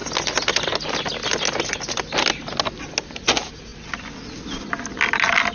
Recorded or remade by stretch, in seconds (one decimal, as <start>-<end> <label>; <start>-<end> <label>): 0.0-5.5 recorded

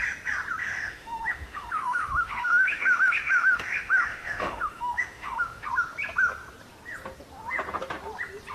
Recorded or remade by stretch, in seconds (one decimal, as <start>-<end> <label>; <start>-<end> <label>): 0.0-0.6 recorded; 0.6-5.7 remade; 5.7-8.5 recorded

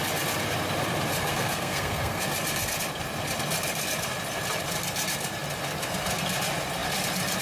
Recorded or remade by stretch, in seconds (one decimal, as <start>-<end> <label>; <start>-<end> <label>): 0.0-1.3 recorded; 1.3-2.2 remade; 2.2-7.4 recorded

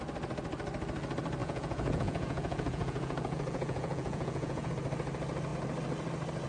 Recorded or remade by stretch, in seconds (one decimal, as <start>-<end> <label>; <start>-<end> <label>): 0.0-1.4 recorded; 1.4-4.7 remade; 4.7-6.5 recorded

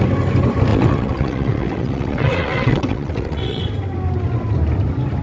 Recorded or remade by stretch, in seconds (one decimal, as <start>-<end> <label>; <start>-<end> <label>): 0.0-0.7 recorded; 0.7-3.7 remade; 3.7-5.2 recorded

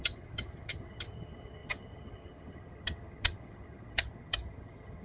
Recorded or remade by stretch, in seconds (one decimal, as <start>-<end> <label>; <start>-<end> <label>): 0.0-5.0 remade

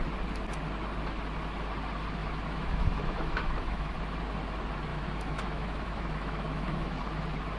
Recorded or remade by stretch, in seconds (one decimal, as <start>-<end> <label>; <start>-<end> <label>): 0.0-2.2 recorded; 2.2-3.9 remade; 3.9-4.9 recorded; 4.9-7.0 remade; 7.0-7.6 recorded